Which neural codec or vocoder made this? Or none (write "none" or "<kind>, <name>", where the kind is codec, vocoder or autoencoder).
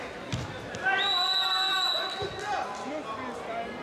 none